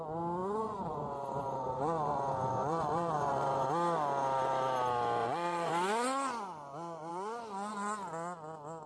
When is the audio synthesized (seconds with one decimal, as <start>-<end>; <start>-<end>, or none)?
0.4-3.7; 5.2-5.7; 7.1-7.7